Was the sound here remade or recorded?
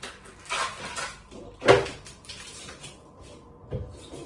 recorded